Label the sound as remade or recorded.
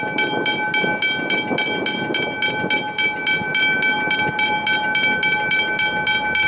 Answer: recorded